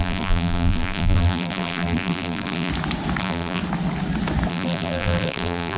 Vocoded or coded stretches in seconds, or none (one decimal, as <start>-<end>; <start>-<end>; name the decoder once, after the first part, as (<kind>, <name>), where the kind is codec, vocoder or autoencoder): 0.0-2.7 (vocoder, BigVGAN v2); 3.2-3.6; 4.5-5.8